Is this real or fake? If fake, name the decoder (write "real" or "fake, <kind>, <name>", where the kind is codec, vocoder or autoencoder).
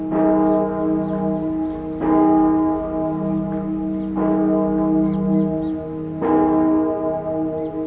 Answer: real